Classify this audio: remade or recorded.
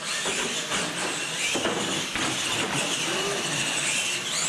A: recorded